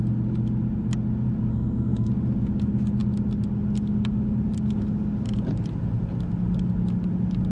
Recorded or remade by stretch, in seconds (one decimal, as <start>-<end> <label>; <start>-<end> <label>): 0.0-1.5 recorded; 1.5-2.1 remade; 2.1-7.5 recorded